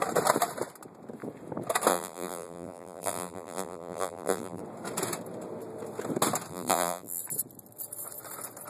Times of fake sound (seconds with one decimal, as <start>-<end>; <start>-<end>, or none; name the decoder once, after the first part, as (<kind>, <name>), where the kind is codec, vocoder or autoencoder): 1.9-4.6 (vocoder, BigVGAN v2); 6.5-7.2